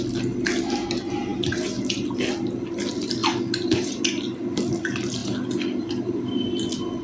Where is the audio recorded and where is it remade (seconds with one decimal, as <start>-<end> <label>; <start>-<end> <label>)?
0.0-1.3 recorded; 1.3-1.9 remade; 1.9-3.2 recorded; 3.2-3.9 remade; 3.9-5.2 recorded; 5.2-6.2 remade; 6.2-7.0 recorded